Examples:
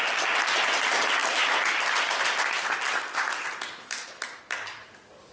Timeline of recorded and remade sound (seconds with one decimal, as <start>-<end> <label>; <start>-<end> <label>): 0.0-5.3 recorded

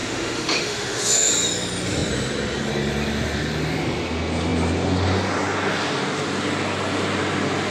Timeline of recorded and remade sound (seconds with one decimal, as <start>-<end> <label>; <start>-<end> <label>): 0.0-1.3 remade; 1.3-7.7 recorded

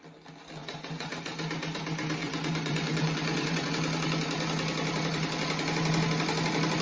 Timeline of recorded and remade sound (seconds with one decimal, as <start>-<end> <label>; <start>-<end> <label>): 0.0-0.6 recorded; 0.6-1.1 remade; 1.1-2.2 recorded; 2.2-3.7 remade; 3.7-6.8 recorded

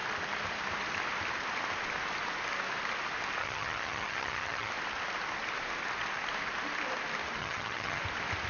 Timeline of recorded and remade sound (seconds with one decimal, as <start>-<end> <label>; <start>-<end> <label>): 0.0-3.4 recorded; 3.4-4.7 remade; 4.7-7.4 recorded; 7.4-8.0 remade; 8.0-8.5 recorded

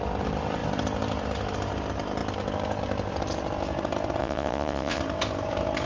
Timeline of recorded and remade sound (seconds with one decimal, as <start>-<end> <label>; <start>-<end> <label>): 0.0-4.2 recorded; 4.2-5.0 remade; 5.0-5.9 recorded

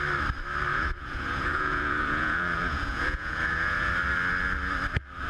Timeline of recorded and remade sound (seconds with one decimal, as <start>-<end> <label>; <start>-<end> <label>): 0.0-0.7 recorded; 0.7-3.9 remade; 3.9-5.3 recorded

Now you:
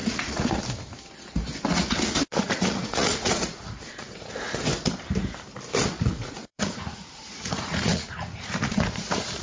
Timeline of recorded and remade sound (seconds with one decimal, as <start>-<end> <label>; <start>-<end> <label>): 0.0-0.6 remade; 0.6-1.7 recorded; 1.7-4.3 remade; 4.3-6.0 recorded; 6.0-9.4 remade

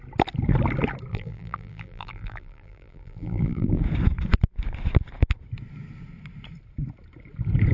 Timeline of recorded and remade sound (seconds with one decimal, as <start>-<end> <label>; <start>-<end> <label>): 0.0-1.1 recorded; 1.1-3.8 remade; 3.8-7.7 recorded